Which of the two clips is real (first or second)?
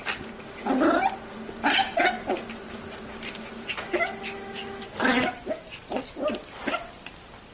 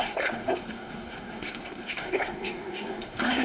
first